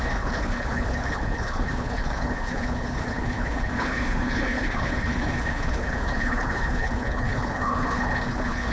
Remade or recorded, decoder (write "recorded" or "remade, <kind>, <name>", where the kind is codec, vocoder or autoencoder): remade, codec, HILCodec